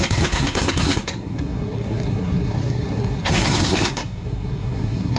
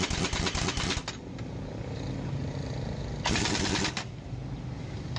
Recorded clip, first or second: second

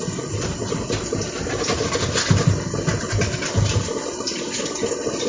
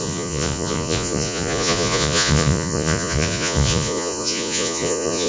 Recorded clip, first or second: first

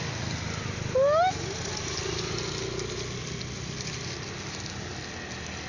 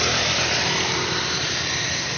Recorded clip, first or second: first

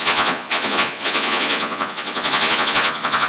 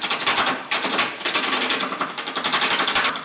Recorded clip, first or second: second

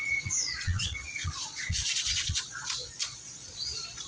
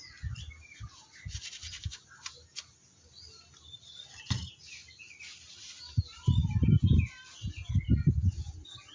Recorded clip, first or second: second